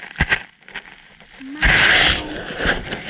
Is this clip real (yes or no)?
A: yes